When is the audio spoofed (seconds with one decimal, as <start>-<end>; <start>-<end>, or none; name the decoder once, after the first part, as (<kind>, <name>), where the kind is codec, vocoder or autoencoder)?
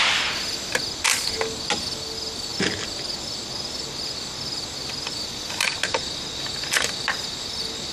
none